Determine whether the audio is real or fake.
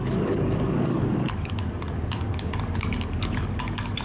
fake